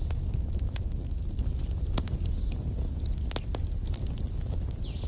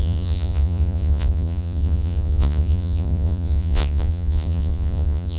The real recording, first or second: first